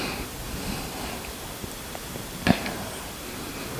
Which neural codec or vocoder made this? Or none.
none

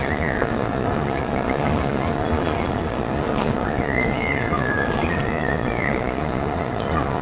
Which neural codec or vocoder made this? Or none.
vocoder, Vocos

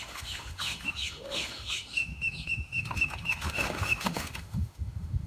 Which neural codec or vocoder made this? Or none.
autoencoder, DAC-VAE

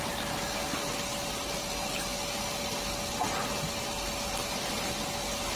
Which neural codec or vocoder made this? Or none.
none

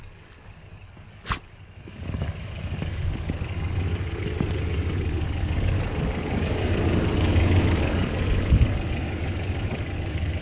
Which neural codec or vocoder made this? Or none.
codec, DAC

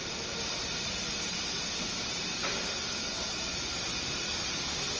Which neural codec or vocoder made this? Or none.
none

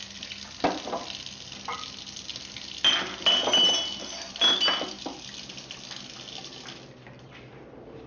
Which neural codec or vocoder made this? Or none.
none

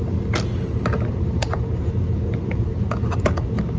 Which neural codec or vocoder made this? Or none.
none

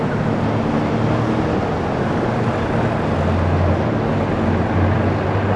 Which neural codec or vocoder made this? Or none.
none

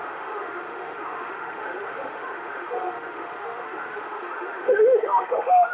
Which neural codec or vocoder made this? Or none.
autoencoder, DAC-VAE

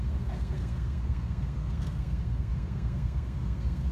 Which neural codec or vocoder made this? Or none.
codec, SNAC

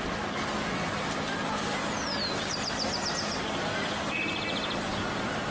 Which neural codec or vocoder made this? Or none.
none